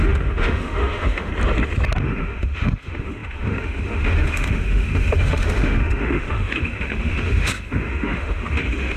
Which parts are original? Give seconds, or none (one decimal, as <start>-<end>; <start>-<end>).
1.3-2.0